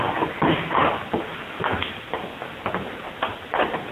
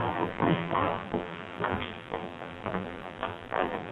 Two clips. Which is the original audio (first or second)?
first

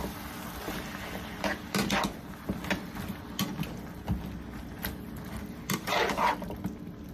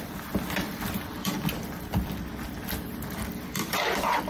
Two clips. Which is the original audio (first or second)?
first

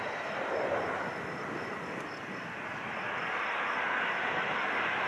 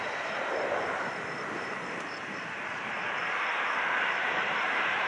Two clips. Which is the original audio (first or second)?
first